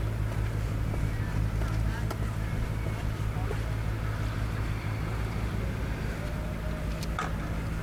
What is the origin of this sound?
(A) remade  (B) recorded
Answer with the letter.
B